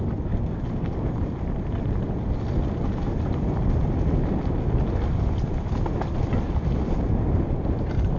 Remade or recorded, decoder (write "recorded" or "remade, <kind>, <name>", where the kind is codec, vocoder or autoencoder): recorded